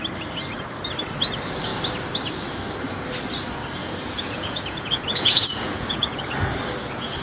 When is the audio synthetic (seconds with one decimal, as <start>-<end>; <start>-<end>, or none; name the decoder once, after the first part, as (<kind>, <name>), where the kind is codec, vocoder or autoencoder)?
3.8-6.2 (vocoder, Vocos)